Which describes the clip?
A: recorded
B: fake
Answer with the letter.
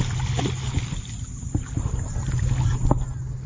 A